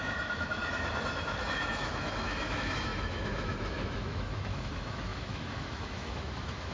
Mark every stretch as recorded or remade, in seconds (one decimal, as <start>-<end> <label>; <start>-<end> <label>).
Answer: 0.0-6.7 remade